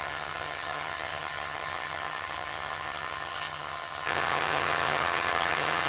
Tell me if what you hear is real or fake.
fake